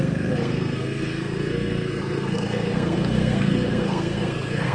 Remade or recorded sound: remade